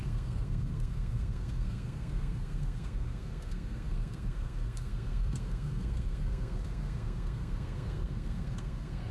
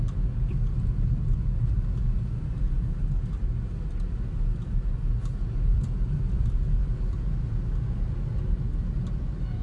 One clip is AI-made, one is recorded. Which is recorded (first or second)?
second